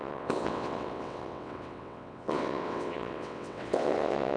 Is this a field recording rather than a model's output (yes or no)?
no